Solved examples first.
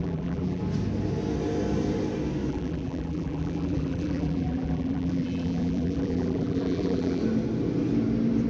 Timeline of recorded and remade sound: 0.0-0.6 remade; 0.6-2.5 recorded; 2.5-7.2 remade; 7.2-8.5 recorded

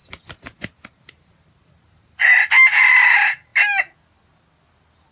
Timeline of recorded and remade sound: 0.0-3.1 remade; 3.1-5.1 recorded